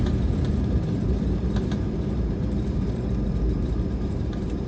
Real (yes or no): no